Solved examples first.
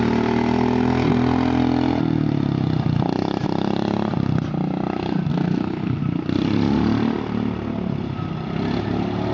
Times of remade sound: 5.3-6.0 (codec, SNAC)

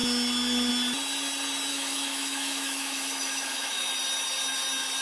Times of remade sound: 1.7-3.9 (autoencoder, DAC-VAE)

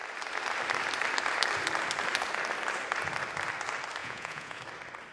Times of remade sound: 4.0-4.6 (vocoder, Vocos)

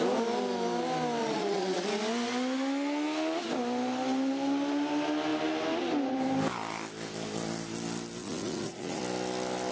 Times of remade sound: 1.2-1.9 (vocoder, Vocos); 8.2-9.0

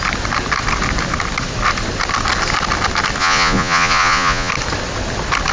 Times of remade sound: 3.2-4.5 (vocoder, Vocos)

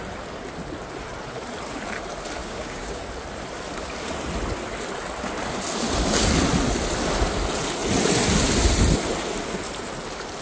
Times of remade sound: 2.4-3.0 (codec, DAC)

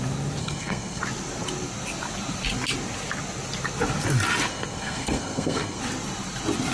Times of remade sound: 0.4-1.0 (codec, SNAC); 4.5-5.8